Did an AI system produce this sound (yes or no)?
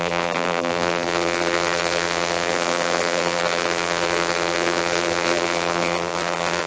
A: yes